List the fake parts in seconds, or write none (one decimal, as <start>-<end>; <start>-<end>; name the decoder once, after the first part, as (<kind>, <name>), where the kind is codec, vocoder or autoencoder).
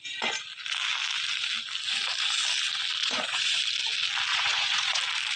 3.0-3.6 (vocoder, Vocos); 4.3-5.0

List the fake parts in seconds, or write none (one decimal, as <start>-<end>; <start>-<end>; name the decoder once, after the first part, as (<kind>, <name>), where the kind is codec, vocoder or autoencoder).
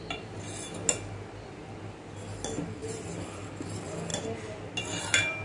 none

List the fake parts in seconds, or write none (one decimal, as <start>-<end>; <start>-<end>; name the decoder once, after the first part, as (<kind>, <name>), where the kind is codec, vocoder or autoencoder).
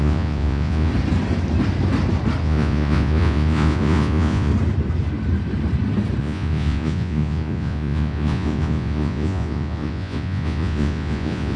0.0-0.9 (vocoder, Vocos); 2.4-4.5; 6.2-11.6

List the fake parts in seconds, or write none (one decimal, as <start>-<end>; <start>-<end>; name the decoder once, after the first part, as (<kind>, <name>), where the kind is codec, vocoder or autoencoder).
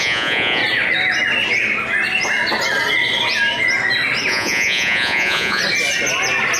0.0-0.6 (vocoder, Vocos); 4.3-5.6